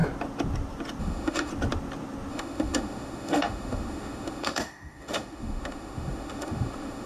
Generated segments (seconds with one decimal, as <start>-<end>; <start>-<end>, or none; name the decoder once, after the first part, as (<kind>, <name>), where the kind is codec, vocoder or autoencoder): 1.0-1.5 (autoencoder, DAC-VAE); 2.3-7.1